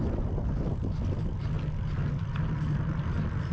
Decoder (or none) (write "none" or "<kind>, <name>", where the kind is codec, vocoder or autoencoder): none